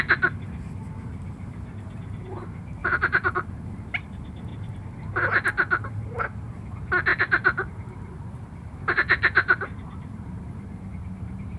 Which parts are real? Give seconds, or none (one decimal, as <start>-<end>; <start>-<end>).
0.0-2.8; 4.0-7.1